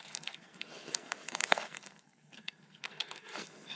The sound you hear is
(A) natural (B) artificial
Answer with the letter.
B